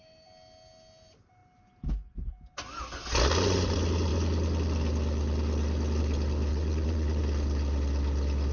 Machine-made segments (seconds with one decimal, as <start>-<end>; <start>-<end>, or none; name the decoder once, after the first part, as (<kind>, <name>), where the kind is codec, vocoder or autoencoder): 6.5-7.2 (vocoder, WaveNeXt)